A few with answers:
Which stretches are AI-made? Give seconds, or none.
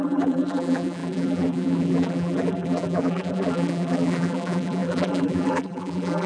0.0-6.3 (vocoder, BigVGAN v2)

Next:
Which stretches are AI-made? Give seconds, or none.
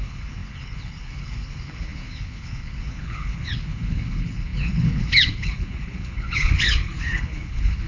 0.0-7.9 (codec, HILCodec)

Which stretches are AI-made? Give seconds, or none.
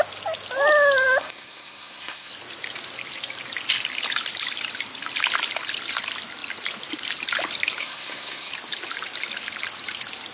1.2-2.3 (codec, SNAC); 7.8-8.5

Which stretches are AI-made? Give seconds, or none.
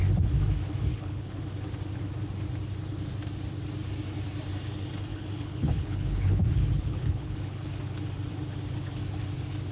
0.9-1.4 (codec, HILCodec); 5.1-7.7